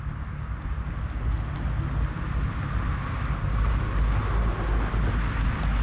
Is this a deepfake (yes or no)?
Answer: no